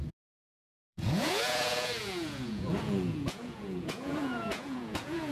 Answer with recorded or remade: remade